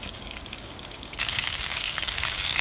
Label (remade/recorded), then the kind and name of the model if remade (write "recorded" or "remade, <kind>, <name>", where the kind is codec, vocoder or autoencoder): remade, codec, DAC